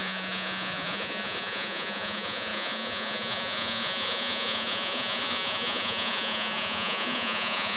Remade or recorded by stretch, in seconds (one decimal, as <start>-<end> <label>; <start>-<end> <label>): 0.0-7.8 remade